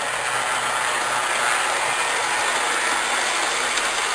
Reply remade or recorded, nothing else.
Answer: recorded